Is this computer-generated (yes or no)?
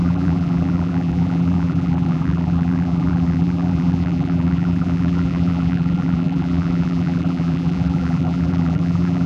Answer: yes